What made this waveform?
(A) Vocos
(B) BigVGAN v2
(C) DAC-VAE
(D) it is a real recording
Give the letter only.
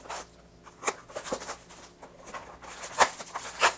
D